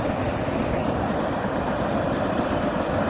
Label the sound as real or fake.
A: real